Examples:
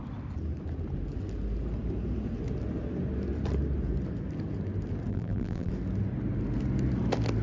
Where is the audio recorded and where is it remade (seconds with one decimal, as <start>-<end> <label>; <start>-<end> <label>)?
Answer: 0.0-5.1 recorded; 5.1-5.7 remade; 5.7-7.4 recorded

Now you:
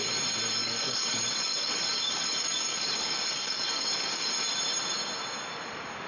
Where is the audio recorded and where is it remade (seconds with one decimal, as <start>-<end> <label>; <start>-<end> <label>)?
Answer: 0.0-0.6 recorded; 0.6-4.3 remade; 4.3-6.1 recorded

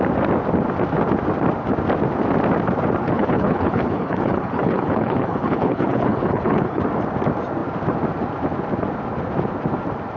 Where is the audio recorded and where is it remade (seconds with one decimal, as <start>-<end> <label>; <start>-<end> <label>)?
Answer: 0.0-3.0 recorded; 3.0-6.8 remade; 6.8-10.2 recorded